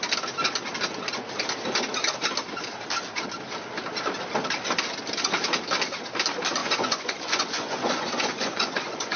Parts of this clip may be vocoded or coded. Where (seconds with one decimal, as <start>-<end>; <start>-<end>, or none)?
6.6-9.2